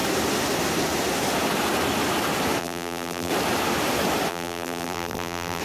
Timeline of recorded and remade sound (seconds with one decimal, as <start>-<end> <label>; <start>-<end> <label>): 0.0-2.6 recorded; 2.6-3.3 remade; 3.3-4.3 recorded; 4.3-5.6 remade